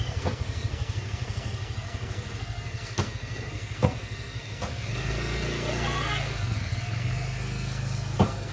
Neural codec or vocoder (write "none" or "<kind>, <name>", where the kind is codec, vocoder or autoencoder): codec, SNAC